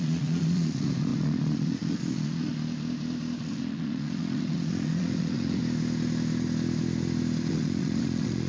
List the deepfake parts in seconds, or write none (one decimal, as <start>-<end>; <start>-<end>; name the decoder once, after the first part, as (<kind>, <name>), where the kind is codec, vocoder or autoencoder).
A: 0.0-2.5 (vocoder, Vocos); 3.4-5.6; 7.5-8.5